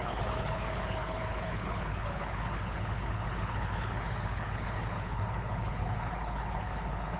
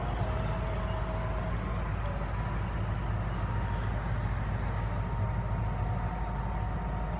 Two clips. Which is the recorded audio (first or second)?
second